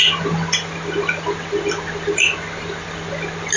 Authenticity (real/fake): real